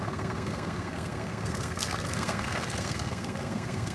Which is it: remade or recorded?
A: remade